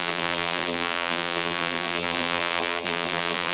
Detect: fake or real fake